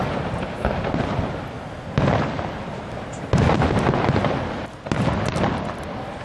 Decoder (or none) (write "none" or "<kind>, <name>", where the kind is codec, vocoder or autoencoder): none